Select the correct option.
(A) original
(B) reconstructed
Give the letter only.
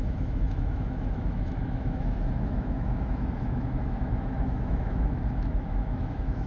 B